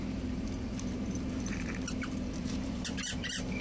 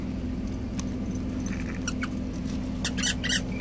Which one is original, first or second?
second